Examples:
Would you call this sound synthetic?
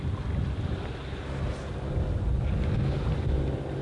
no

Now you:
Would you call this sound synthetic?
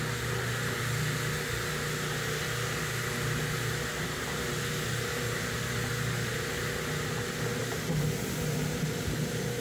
no